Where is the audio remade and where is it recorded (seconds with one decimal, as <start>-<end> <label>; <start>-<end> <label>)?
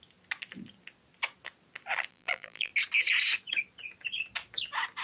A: 0.0-2.1 recorded; 2.1-2.7 remade; 2.7-5.0 recorded